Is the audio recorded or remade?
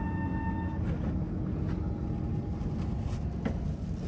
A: recorded